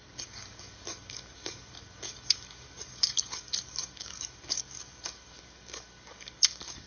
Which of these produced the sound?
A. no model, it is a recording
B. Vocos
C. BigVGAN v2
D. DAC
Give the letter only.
D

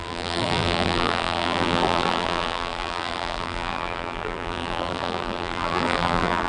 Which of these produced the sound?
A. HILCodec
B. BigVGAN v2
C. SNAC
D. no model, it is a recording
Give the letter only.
B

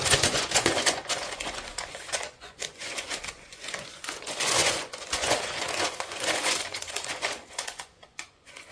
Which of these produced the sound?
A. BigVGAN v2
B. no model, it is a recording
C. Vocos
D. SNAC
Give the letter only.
C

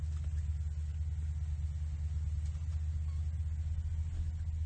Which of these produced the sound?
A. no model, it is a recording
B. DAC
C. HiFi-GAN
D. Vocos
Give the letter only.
A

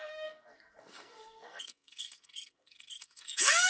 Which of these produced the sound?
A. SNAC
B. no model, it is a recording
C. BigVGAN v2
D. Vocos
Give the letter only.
A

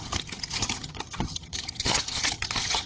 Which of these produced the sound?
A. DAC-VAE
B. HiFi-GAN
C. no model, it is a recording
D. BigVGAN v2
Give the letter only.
B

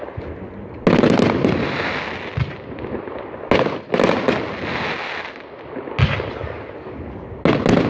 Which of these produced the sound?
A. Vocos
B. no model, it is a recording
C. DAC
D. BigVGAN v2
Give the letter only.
B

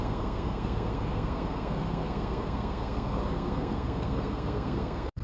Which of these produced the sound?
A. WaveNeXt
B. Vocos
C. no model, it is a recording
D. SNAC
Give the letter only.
D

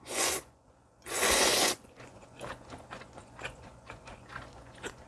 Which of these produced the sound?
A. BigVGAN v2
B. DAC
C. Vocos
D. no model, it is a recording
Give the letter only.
C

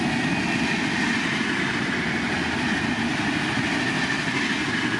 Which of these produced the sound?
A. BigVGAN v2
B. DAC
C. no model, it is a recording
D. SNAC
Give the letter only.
C